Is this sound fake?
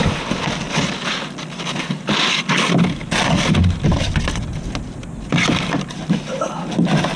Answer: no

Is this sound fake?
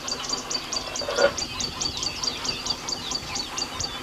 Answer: no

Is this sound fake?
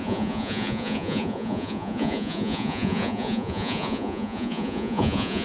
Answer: yes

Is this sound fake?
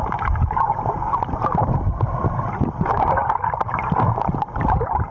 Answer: no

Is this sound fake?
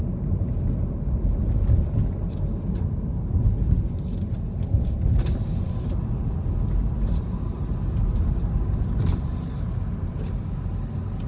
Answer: no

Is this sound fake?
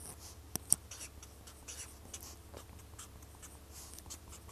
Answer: no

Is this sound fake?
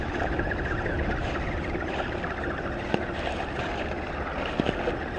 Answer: no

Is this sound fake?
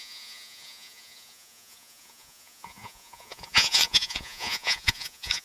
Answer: yes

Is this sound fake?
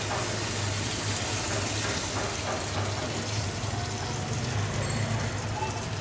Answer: no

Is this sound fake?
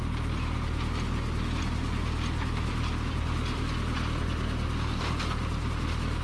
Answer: no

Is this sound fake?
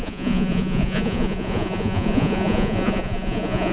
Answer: yes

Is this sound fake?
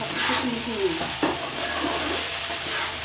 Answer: no